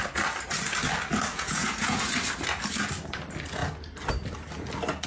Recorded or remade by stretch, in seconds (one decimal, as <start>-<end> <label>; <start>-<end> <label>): 0.0-1.3 recorded; 1.3-2.1 remade; 2.1-5.1 recorded